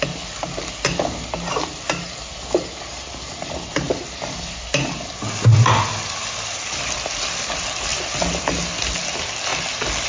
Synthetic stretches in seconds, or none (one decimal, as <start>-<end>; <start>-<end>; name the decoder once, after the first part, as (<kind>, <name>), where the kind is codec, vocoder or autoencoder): none